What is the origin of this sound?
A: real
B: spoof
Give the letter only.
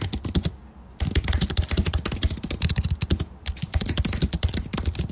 A